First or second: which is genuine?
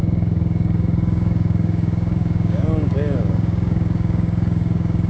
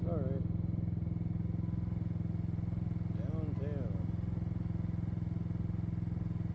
second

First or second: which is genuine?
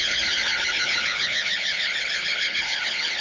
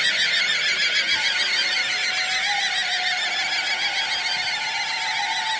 second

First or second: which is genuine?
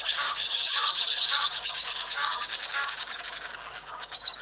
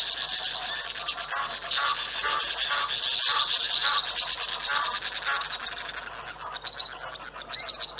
second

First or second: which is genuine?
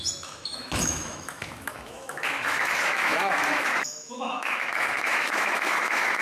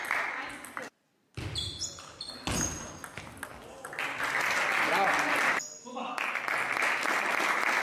second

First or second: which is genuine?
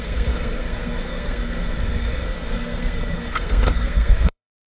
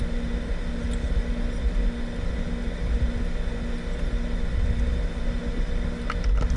second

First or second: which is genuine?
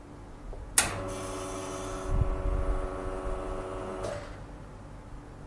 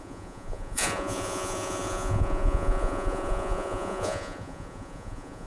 first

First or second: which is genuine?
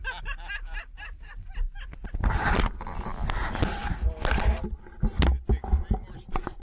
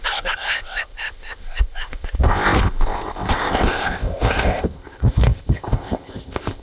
first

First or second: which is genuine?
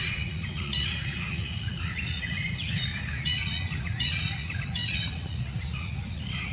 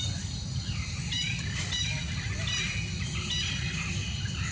second